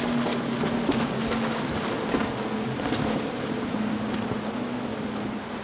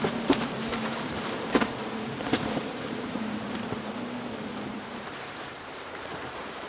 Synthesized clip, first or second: second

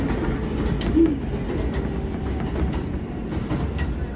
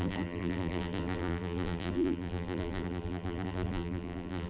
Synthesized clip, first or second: second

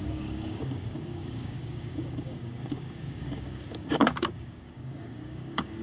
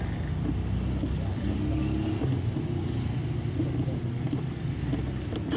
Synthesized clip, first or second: first